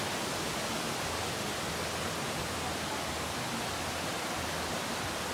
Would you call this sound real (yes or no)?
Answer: yes